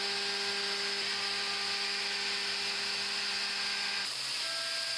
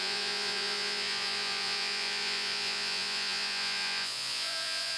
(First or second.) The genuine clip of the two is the first